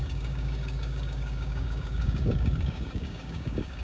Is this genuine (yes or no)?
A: no